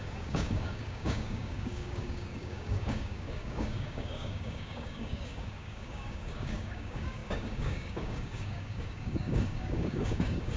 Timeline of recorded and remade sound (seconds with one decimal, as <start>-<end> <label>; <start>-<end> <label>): 0.0-10.6 remade